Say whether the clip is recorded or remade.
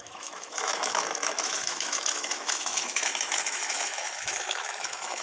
remade